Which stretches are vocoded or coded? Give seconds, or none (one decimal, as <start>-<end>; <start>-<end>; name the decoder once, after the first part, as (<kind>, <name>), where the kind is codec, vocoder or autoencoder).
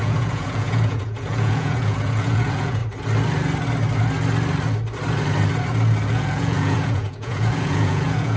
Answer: 0.0-2.8 (vocoder, Vocos); 6.1-8.4